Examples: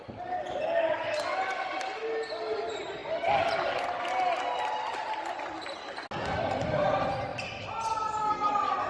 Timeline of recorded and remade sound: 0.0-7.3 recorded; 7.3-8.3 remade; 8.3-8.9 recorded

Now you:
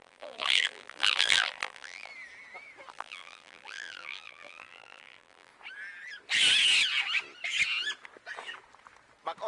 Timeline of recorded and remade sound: 0.0-2.1 remade; 2.1-2.9 recorded; 2.9-5.5 remade; 5.5-9.5 recorded

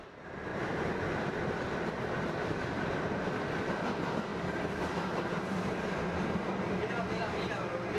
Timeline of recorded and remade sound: 0.0-0.5 recorded; 0.5-3.0 remade; 3.0-8.0 recorded

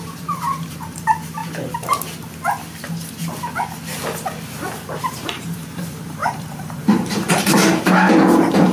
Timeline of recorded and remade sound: 0.0-1.4 remade; 1.4-5.0 recorded; 5.0-8.7 remade

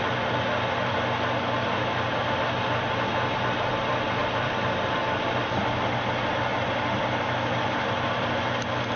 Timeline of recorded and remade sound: 0.0-4.2 recorded; 4.2-5.0 remade; 5.0-6.5 recorded; 6.5-8.3 remade; 8.3-9.0 recorded

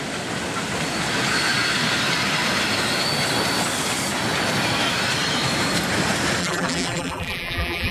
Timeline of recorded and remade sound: 0.0-6.4 recorded; 6.4-7.9 remade